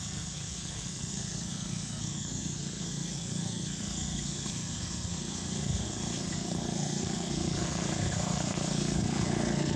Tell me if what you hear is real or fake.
fake